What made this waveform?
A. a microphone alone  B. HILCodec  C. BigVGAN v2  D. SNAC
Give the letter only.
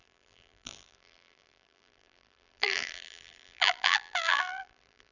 C